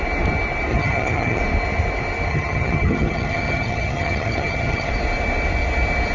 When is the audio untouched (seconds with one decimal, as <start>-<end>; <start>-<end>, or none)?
0.0-0.7; 1.4-2.3; 4.9-6.1